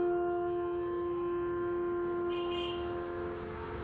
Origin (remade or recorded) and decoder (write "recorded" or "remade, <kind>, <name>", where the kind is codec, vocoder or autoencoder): recorded